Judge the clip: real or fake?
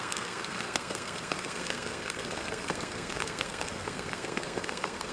fake